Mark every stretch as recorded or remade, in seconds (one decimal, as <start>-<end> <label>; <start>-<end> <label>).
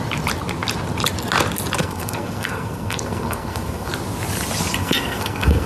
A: 0.0-1.8 recorded; 1.8-3.9 remade; 3.9-4.8 recorded; 4.8-5.7 remade